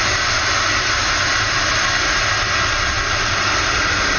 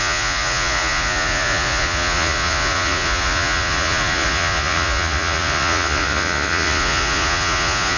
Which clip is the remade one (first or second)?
second